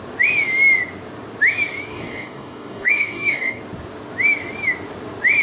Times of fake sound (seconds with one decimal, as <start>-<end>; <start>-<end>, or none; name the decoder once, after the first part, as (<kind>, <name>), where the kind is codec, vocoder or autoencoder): 1.9-3.6 (codec, DAC)